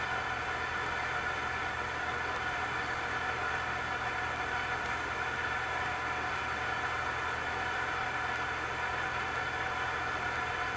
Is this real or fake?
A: real